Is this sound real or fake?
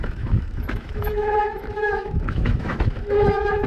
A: fake